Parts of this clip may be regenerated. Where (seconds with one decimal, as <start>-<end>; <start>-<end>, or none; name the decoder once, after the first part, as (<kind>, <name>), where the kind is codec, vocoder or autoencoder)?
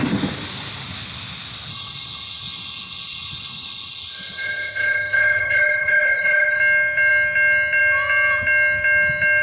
1.7-6.6 (codec, HILCodec)